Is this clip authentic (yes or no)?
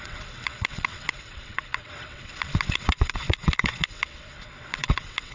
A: no